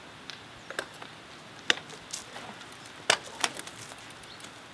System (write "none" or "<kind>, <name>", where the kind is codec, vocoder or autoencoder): none